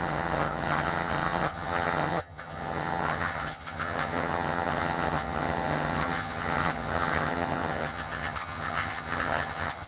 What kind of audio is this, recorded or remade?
remade